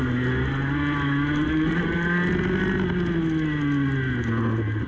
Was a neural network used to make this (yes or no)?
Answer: no